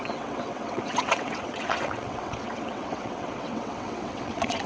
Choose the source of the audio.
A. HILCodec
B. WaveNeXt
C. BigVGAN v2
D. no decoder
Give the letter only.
B